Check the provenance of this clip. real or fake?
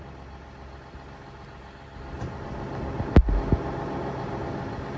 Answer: real